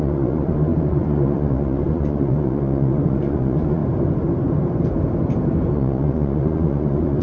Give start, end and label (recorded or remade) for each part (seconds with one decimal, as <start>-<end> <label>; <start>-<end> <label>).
0.0-3.8 remade; 3.8-5.7 recorded; 5.7-7.2 remade